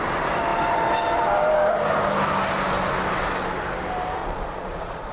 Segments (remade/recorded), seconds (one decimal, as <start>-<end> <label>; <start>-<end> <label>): 0.0-4.2 recorded; 4.2-5.1 remade